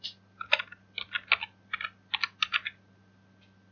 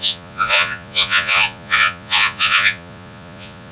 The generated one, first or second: second